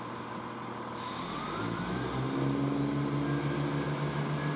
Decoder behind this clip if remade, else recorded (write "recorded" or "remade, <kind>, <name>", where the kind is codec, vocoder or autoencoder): recorded